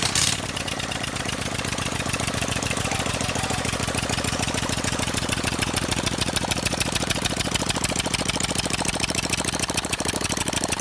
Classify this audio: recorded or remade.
remade